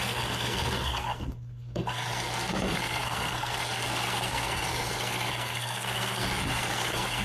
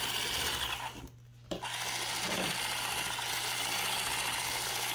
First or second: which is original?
second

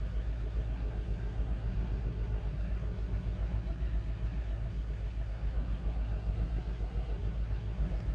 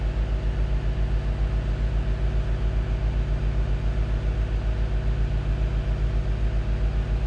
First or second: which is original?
second